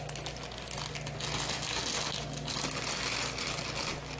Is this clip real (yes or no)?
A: yes